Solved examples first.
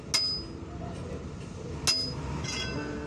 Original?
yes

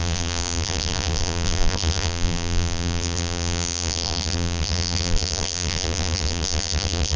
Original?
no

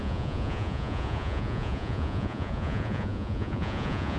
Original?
no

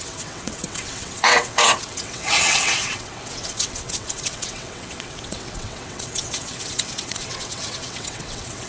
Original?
no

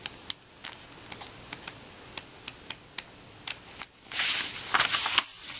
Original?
yes